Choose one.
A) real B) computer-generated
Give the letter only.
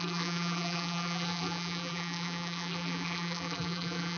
B